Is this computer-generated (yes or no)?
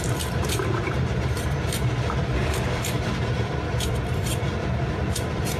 yes